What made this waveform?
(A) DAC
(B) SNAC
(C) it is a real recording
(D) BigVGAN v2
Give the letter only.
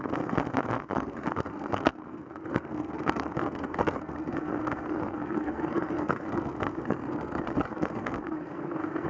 B